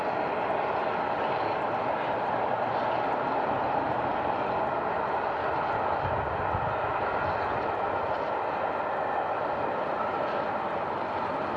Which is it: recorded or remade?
recorded